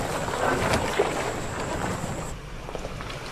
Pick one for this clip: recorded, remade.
recorded